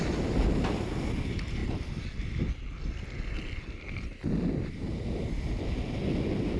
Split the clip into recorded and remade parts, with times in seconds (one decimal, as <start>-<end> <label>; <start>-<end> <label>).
0.0-6.6 recorded